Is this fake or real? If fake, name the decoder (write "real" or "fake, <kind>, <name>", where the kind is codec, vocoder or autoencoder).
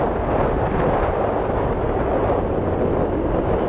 real